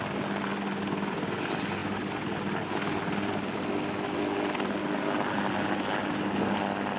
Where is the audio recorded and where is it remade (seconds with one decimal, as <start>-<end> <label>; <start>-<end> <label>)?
0.0-7.0 recorded